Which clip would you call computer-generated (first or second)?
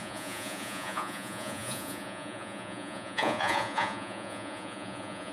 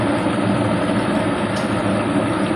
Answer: first